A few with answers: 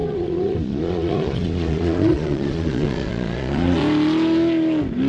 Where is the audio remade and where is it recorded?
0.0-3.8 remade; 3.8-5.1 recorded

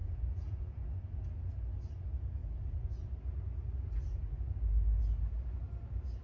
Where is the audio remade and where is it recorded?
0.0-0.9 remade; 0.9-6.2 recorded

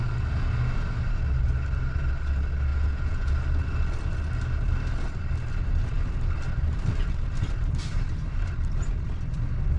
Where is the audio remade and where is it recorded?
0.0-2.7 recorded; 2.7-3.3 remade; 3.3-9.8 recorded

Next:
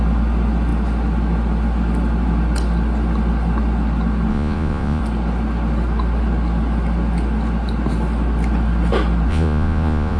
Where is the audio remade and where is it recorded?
0.0-4.3 recorded; 4.3-5.0 remade; 5.0-9.3 recorded; 9.3-10.2 remade